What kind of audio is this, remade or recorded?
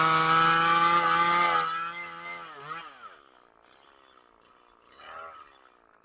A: recorded